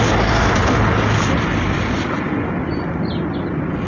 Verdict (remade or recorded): recorded